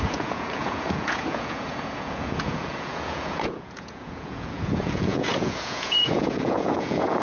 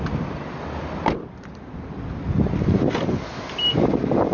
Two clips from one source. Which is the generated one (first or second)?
first